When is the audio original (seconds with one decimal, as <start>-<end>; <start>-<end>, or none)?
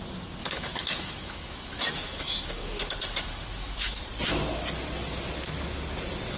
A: 0.0-0.4; 4.0-6.4